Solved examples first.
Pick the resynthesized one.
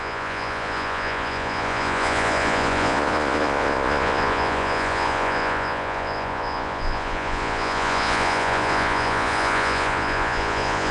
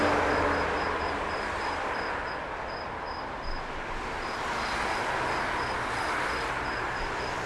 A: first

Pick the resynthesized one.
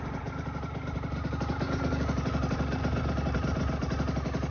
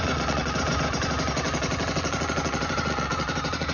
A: second